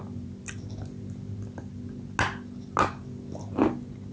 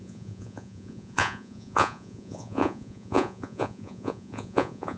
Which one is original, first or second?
first